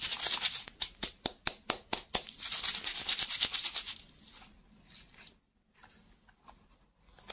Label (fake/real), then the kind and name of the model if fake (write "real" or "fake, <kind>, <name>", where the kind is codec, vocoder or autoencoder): real